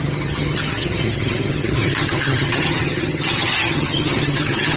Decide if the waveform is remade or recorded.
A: remade